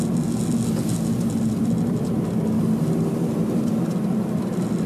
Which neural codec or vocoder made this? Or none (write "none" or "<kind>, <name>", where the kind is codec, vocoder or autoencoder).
none